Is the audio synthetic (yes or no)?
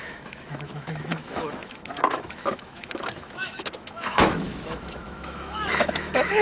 yes